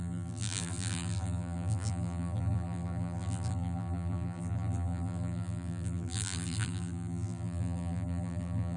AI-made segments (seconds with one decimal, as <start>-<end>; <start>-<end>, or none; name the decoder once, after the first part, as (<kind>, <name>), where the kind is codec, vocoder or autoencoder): 0.0-8.8 (vocoder, BigVGAN v2)